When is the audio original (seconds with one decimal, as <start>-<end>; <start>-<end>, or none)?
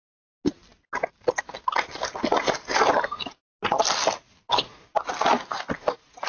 0.0-6.3